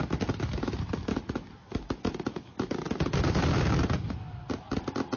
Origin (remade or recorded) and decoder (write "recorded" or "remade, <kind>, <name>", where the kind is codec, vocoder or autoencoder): recorded